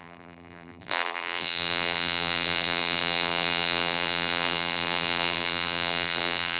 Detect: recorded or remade remade